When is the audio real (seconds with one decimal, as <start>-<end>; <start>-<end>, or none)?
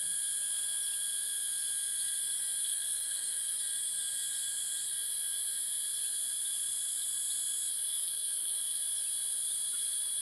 0.0-2.6; 3.6-7.9; 8.8-10.2